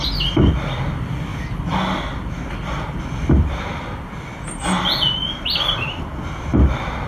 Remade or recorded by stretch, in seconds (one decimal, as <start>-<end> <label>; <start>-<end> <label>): 0.0-7.1 recorded